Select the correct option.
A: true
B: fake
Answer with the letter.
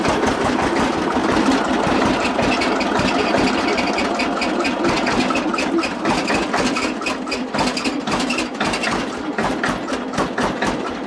A